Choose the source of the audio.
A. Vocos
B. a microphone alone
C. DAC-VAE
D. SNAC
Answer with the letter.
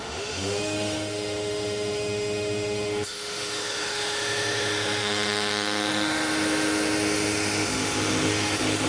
C